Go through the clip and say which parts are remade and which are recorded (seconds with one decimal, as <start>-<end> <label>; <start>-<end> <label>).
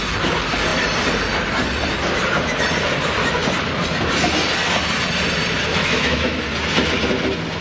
0.0-5.7 recorded; 5.7-6.4 remade; 6.4-7.6 recorded